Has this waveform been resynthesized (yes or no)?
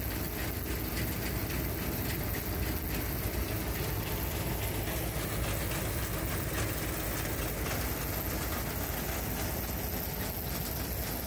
no